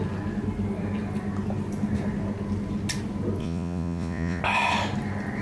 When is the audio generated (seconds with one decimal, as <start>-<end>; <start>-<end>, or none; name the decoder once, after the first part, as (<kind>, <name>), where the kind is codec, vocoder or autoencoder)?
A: 3.4-4.4 (vocoder, Vocos)